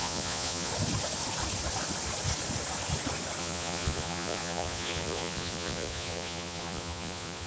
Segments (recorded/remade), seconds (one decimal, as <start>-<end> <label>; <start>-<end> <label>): 0.0-0.7 remade; 0.7-3.4 recorded; 3.4-7.5 remade